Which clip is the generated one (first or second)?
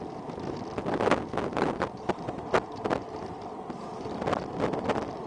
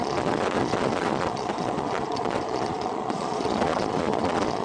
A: second